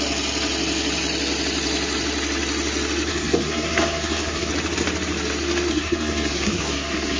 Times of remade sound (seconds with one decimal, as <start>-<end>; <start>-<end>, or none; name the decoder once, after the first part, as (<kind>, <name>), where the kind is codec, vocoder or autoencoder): 3.1-4.5 (codec, SNAC); 5.7-7.2